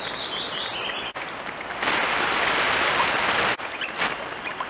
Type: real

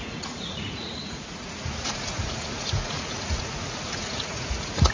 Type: fake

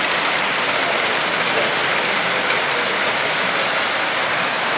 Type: real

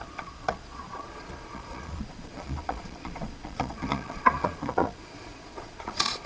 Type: fake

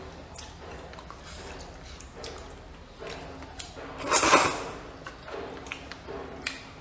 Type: real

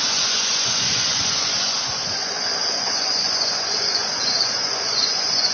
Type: fake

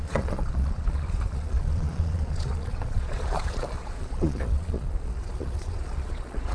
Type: fake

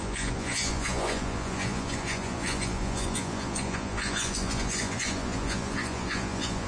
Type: fake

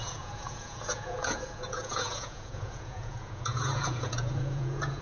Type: fake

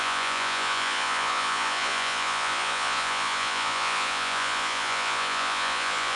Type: fake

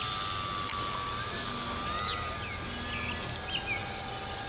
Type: real